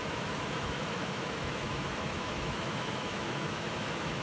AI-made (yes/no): yes